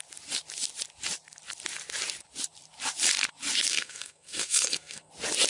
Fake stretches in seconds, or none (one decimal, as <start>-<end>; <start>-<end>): 3.7-5.1